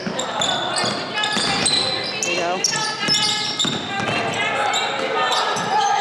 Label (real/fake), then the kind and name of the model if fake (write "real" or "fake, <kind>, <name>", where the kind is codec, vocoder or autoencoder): real